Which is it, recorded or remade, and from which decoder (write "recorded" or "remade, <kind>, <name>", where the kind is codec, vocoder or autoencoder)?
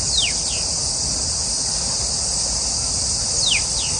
recorded